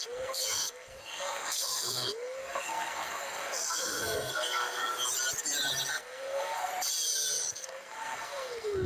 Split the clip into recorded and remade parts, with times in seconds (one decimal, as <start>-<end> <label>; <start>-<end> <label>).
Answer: 0.0-4.8 remade; 4.8-5.9 recorded; 5.9-6.7 remade; 6.7-7.5 recorded; 7.5-8.9 remade